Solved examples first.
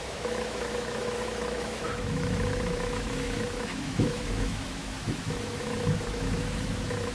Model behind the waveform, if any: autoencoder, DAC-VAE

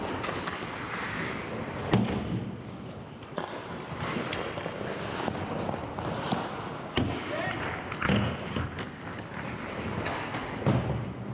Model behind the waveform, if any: none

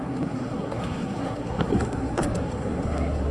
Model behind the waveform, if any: codec, SNAC